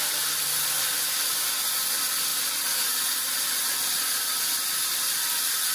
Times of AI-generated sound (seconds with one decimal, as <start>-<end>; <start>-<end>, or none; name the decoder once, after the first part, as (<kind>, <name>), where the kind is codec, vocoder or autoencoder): none